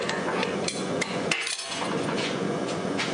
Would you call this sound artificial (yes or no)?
yes